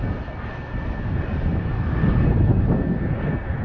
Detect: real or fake real